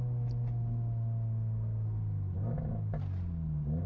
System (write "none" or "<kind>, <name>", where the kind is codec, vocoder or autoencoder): none